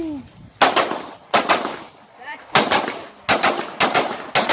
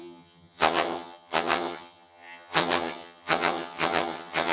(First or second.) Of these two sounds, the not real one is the second